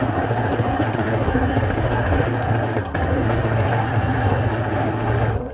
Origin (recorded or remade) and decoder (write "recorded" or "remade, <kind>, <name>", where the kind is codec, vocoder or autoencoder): remade, codec, SNAC